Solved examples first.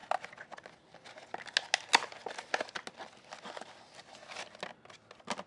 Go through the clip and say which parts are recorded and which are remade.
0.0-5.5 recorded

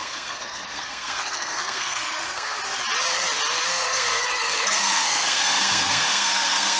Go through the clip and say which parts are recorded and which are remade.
0.0-2.6 remade; 2.6-3.7 recorded; 3.7-6.8 remade

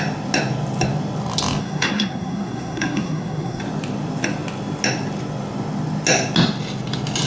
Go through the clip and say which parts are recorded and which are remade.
0.0-1.6 recorded; 1.6-3.6 remade; 3.6-7.3 recorded